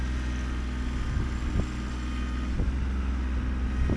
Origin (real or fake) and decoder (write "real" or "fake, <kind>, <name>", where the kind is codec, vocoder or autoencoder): real